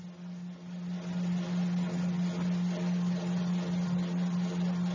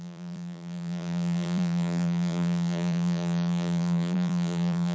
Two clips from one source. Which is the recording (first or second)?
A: first